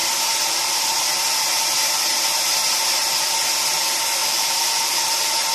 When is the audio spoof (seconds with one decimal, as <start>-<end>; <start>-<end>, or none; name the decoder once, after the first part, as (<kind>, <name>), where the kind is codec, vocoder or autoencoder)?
0.0-2.4 (vocoder, BigVGAN v2); 4.2-4.7